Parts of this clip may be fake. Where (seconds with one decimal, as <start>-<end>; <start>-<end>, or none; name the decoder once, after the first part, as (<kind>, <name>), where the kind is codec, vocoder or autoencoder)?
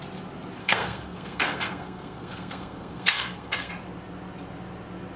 0.6-3.7 (codec, SNAC)